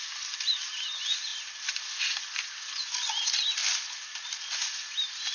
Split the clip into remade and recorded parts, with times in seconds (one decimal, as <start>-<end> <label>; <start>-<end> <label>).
0.0-5.3 recorded